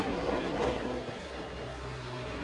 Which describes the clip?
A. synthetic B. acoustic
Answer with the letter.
A